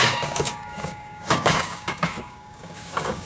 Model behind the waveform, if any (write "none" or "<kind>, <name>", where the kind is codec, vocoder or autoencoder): codec, DAC